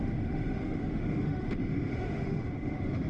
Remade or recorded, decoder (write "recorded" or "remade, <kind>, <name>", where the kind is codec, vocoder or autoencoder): remade, autoencoder, DAC-VAE